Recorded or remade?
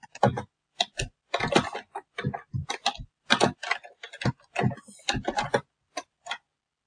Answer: recorded